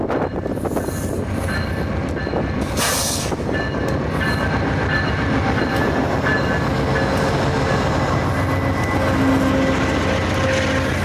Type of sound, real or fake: real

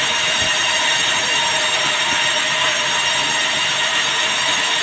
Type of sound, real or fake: real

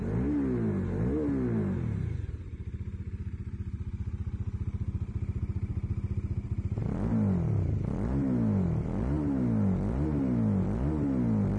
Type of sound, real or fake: real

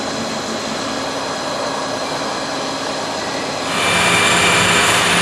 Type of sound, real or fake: real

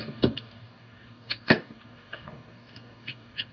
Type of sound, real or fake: fake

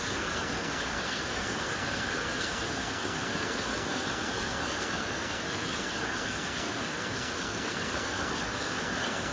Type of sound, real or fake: fake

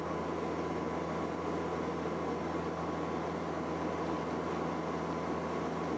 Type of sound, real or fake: real